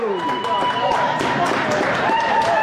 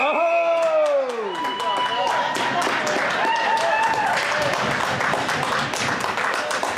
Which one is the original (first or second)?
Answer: second